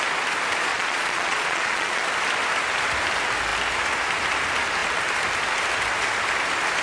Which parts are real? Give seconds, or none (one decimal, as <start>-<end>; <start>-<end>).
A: 0.0-0.7; 2.0-6.8